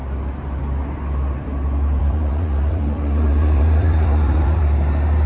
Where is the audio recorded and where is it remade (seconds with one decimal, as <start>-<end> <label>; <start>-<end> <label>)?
0.0-2.0 recorded; 2.0-4.6 remade; 4.6-5.3 recorded